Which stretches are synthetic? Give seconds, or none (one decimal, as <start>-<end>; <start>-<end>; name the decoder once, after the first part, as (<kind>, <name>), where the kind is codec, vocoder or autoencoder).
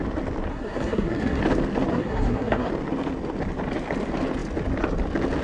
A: 0.5-1.4 (codec, SNAC); 1.9-2.7